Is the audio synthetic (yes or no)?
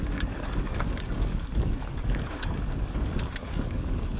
yes